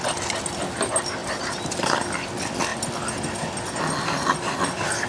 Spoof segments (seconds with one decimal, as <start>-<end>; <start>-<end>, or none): 1.2-1.9